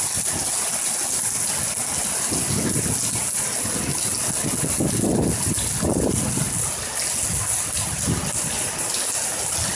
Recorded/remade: recorded